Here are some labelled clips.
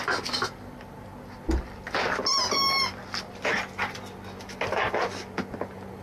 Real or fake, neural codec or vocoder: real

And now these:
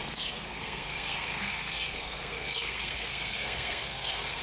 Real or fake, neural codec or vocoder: fake, codec, SNAC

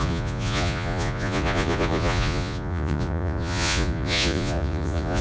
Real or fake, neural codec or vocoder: fake, vocoder, Vocos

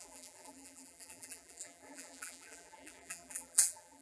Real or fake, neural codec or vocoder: fake, vocoder, BigVGAN v2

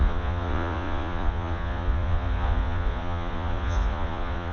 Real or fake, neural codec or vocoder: fake, vocoder, Vocos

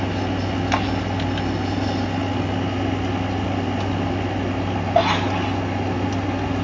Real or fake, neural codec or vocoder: real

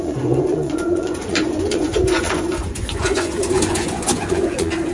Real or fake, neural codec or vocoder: fake, vocoder, Vocos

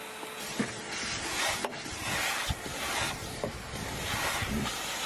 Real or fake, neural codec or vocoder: real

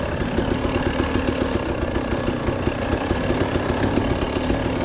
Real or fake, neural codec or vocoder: real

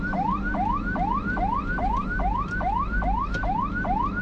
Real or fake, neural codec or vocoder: real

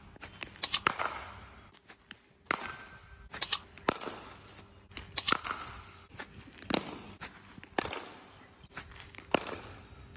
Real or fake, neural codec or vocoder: real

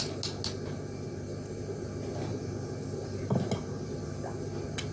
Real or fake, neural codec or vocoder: real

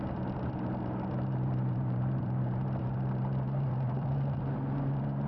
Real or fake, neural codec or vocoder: fake, vocoder, BigVGAN v2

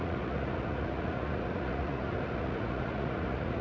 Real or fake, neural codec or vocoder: fake, vocoder, Vocos